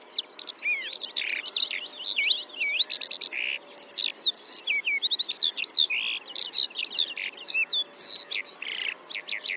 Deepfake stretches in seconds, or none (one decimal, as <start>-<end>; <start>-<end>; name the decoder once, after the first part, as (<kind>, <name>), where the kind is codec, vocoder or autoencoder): none